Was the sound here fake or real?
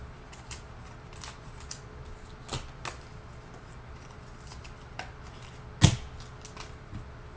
real